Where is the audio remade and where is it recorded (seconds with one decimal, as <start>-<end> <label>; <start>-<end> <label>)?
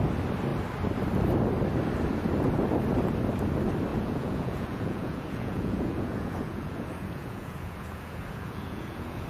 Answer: 0.0-3.9 recorded; 3.9-9.3 remade